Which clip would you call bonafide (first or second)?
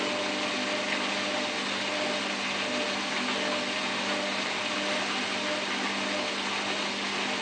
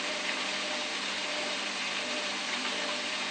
first